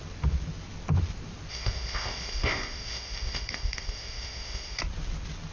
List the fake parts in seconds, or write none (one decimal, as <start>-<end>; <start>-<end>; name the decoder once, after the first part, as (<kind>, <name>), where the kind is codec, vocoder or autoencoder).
1.5-4.8 (codec, ZipCodec)